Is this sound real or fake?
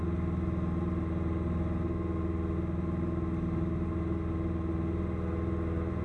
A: real